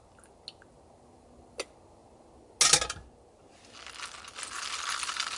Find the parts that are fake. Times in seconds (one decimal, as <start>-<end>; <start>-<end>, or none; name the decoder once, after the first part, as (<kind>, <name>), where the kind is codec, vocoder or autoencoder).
none